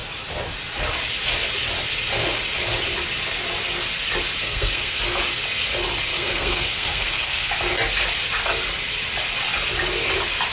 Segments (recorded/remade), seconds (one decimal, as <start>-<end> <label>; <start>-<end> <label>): 0.0-4.4 recorded; 4.4-5.0 remade; 5.0-6.1 recorded; 6.1-7.5 remade; 7.5-10.5 recorded